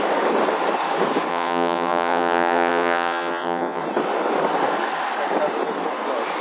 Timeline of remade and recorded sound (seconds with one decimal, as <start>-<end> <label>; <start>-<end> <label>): 0.0-1.3 recorded; 1.3-3.8 remade; 3.8-6.4 recorded

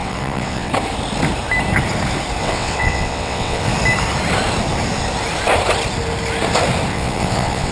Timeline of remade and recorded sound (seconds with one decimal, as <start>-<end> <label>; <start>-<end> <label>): 0.0-0.7 remade; 0.7-2.4 recorded; 2.4-3.7 remade; 3.7-6.9 recorded; 6.9-7.7 remade

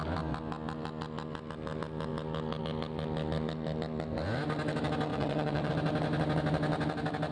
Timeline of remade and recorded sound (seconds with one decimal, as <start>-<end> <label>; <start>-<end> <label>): 0.0-5.1 recorded; 5.1-5.7 remade; 5.7-7.3 recorded

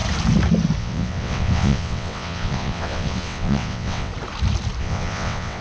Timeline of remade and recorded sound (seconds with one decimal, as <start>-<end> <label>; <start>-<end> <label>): 0.0-0.8 recorded; 0.8-4.1 remade; 4.1-4.8 recorded; 4.8-5.6 remade